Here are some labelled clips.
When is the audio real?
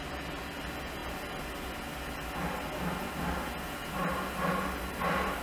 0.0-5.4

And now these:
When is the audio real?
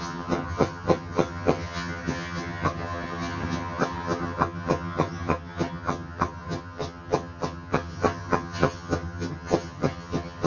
none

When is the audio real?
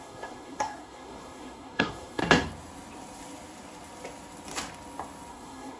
2.2-5.3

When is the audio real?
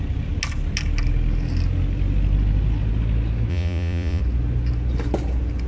0.0-3.5; 4.2-5.7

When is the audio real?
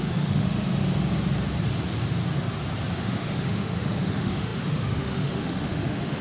0.8-2.9